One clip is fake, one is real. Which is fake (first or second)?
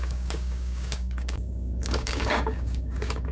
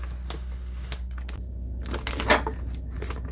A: first